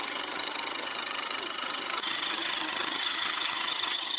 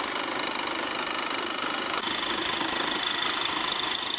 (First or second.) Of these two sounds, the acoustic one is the second